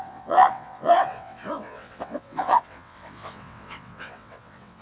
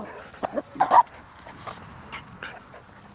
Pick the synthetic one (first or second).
first